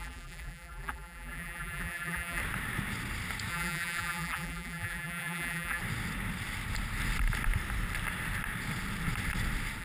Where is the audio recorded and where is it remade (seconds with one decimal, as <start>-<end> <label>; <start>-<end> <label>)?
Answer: 0.0-2.4 remade; 2.4-3.5 recorded; 3.5-5.8 remade; 5.8-9.8 recorded